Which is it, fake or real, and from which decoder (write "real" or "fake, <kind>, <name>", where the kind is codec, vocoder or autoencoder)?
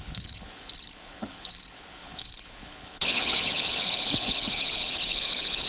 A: fake, codec, HILCodec